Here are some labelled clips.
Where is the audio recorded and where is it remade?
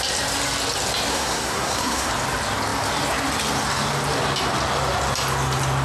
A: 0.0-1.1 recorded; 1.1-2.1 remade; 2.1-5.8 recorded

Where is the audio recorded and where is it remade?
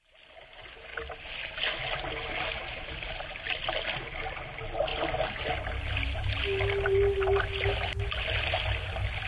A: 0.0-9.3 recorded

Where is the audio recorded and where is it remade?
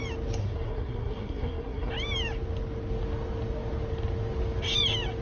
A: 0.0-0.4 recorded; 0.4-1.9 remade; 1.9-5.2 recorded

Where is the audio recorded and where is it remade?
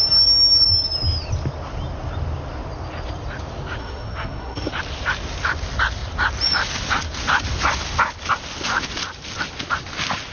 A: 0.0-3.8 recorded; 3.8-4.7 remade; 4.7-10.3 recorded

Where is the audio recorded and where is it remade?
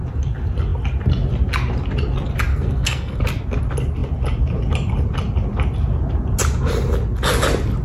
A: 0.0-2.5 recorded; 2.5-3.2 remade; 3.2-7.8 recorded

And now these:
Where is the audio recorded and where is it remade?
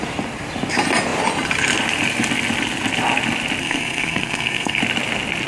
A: 0.0-3.6 recorded; 3.6-4.8 remade; 4.8-5.5 recorded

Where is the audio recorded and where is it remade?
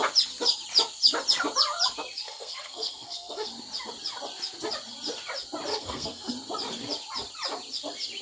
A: 0.0-2.2 recorded; 2.2-3.5 remade; 3.5-5.7 recorded; 5.7-6.3 remade; 6.3-8.2 recorded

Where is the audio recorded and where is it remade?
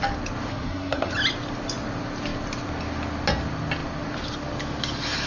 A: 0.0-0.5 recorded; 0.5-1.1 remade; 1.1-5.3 recorded